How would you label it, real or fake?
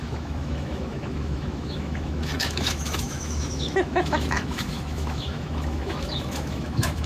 fake